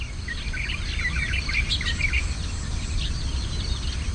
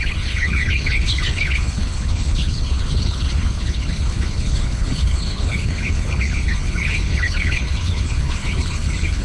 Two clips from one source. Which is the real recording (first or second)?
first